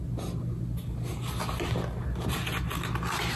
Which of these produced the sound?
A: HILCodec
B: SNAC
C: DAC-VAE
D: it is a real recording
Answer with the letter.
D